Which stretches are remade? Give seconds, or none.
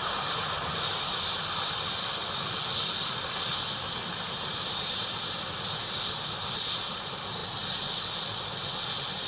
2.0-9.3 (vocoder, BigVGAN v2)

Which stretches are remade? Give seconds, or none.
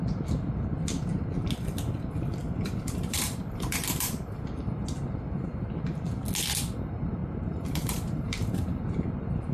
2.4-4.7 (vocoder, BigVGAN v2); 7.2-8.6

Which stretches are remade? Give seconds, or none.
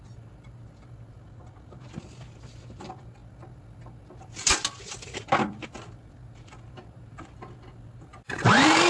0.0-8.1 (vocoder, BigVGAN v2)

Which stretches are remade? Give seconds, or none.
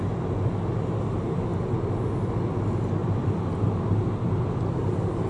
3.0-4.2 (vocoder, BigVGAN v2)